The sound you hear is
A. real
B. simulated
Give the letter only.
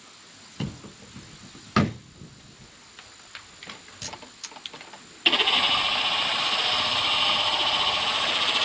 A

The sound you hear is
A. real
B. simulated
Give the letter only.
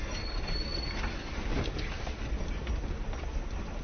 A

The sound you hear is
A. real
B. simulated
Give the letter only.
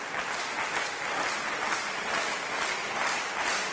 A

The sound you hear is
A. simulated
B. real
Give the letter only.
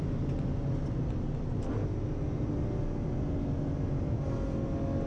B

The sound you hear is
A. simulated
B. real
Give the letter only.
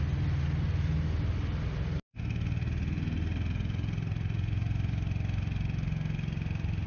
B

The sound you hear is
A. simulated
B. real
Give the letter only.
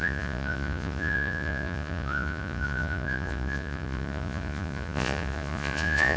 A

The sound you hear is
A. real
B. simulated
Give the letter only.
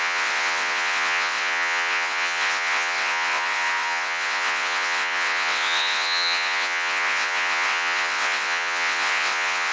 B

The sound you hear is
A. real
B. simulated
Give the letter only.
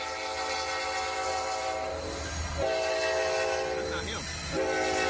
A